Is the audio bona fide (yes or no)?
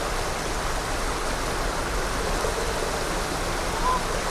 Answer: yes